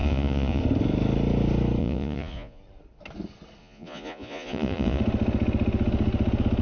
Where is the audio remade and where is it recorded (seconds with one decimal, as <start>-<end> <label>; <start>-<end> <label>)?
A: 0.0-0.6 remade; 0.6-1.8 recorded; 1.8-2.6 remade; 2.6-3.6 recorded; 3.6-5.0 remade; 5.0-6.6 recorded